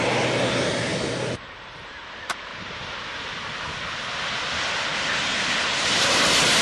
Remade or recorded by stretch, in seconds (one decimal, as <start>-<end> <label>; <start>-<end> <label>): 0.0-6.6 recorded

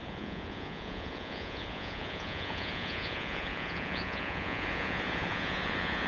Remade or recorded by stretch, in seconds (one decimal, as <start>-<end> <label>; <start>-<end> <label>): 0.0-6.1 remade

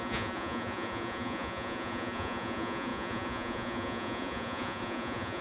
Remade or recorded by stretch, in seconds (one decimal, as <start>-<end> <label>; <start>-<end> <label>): 0.0-5.4 remade

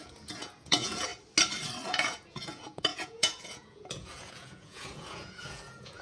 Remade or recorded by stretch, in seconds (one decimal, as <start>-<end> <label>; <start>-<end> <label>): 0.0-1.1 remade; 1.1-1.9 recorded; 1.9-6.0 remade

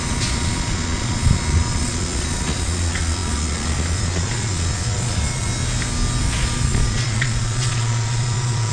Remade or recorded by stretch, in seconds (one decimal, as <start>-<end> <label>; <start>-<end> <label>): 0.0-5.5 remade; 5.5-6.2 recorded; 6.2-8.7 remade